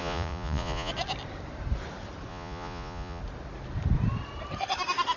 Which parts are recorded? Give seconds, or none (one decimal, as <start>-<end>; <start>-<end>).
0.9-2.3; 3.2-5.2